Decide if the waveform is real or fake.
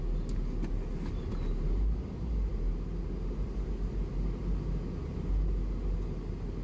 real